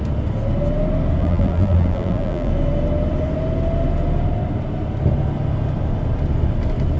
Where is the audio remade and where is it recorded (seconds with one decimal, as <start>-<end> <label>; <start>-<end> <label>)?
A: 0.0-1.2 recorded; 1.2-2.5 remade; 2.5-7.0 recorded